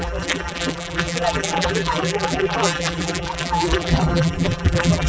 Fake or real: fake